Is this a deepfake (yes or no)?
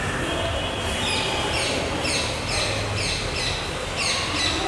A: no